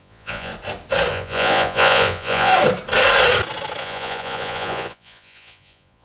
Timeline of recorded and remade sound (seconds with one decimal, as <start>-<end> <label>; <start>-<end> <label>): 0.0-0.5 remade; 0.5-1.1 recorded; 1.1-2.5 remade; 2.5-3.8 recorded; 3.8-6.0 remade